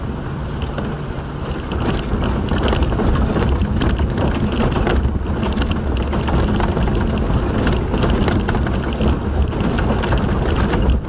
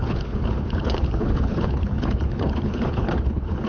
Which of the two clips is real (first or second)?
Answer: first